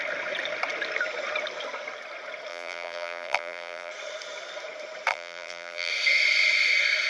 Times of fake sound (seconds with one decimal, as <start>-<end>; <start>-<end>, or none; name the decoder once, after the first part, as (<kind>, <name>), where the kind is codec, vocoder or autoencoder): 2.5-3.9 (vocoder, BigVGAN v2); 5.1-5.9